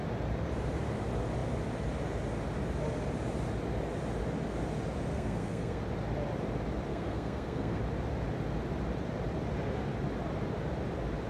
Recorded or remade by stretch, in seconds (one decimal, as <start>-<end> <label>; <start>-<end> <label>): 0.0-5.1 recorded; 5.1-5.8 remade; 5.8-6.9 recorded; 6.9-7.8 remade; 7.8-11.3 recorded